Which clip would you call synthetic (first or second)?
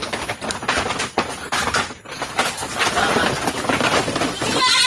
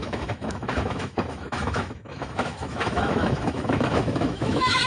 second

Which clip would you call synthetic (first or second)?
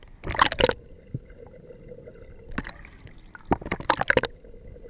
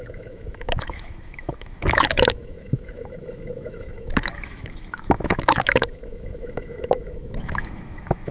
second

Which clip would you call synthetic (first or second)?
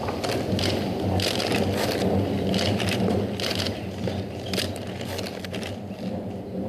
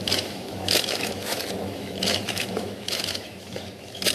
second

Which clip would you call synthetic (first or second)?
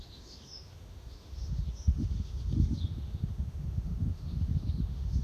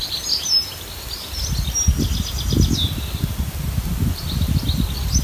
first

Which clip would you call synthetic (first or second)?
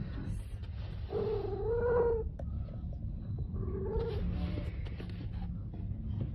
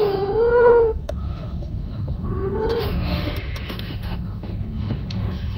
second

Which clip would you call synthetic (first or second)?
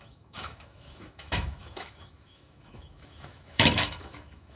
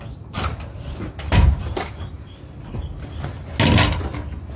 first